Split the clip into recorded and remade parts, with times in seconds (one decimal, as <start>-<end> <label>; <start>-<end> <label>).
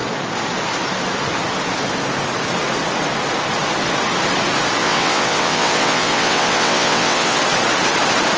0.0-4.8 recorded; 4.8-7.4 remade; 7.4-8.4 recorded